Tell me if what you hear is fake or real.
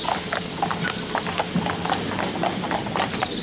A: real